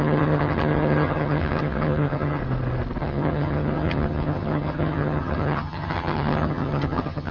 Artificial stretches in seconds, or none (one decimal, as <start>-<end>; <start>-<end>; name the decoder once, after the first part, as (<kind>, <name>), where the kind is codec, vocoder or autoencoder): 0.0-2.4 (vocoder, HiFi-GAN); 3.0-7.3